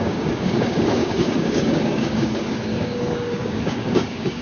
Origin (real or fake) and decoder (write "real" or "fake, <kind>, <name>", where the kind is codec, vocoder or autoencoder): fake, codec, DAC